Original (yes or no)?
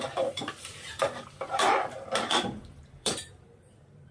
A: no